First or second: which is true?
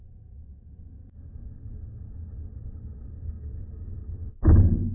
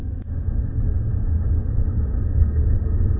first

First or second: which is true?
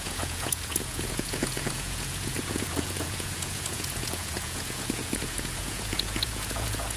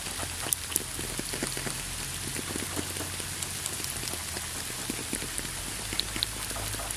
second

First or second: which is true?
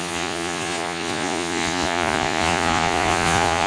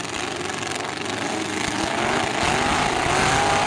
second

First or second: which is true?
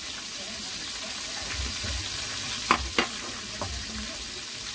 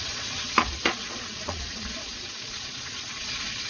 first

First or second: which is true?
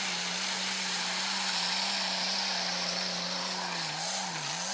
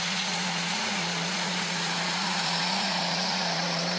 first